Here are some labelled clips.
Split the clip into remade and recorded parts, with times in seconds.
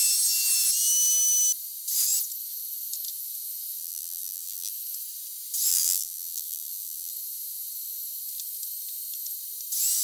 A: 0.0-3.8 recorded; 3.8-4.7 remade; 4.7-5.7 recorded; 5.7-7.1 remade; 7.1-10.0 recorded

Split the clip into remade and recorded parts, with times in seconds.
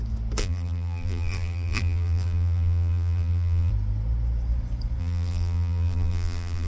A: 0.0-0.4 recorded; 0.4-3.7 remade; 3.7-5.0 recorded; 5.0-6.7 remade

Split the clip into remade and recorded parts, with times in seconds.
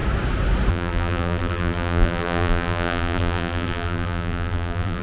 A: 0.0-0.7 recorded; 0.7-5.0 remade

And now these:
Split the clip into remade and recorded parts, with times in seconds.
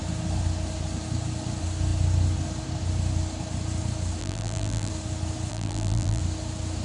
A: 0.0-4.2 recorded; 4.2-4.9 remade; 4.9-5.5 recorded; 5.5-6.2 remade; 6.2-6.8 recorded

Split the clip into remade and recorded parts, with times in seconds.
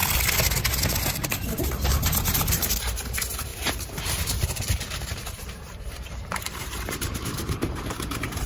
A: 0.0-2.5 recorded; 2.5-8.5 remade